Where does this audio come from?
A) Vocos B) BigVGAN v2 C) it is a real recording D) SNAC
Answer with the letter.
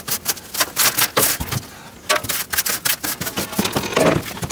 C